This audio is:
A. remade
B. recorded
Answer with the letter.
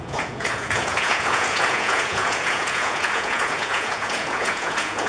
A